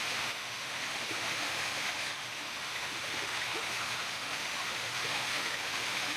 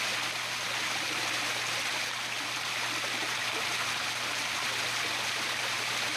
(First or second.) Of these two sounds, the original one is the second